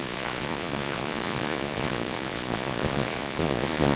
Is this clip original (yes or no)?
no